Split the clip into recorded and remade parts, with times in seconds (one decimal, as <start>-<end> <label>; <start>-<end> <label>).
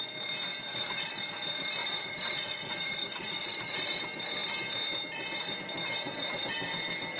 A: 0.0-0.7 recorded; 0.7-1.2 remade; 1.2-1.8 recorded; 1.8-4.0 remade; 4.0-7.2 recorded